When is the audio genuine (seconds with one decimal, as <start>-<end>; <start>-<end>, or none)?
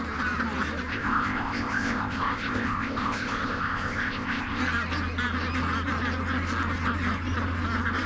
0.0-0.9; 4.6-8.1